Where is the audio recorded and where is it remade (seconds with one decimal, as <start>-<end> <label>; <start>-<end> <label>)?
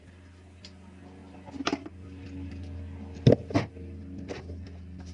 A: 0.0-5.1 recorded